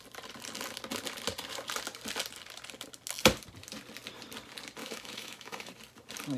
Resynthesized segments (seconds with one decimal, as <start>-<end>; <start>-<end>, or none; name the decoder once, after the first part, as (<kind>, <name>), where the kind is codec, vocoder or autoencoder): 4.8-5.7 (autoencoder, DAC-VAE)